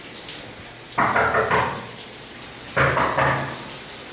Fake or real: real